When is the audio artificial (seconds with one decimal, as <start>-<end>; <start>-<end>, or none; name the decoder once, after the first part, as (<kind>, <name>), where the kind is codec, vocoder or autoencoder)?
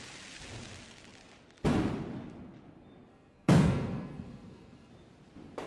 3.1-4.9 (codec, SNAC)